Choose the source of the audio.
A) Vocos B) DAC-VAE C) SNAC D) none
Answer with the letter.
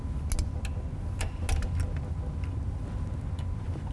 D